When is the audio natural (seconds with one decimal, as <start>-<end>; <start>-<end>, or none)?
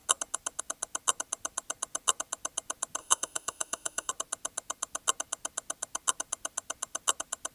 0.0-3.0; 4.1-7.5